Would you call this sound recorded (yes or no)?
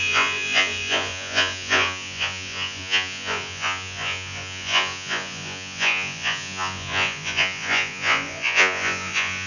no